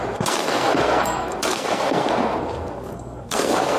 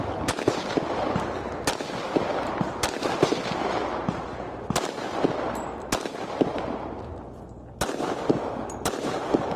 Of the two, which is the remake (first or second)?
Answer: first